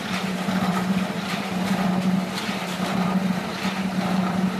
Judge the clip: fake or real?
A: fake